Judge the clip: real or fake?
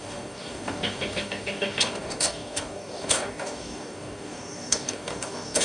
fake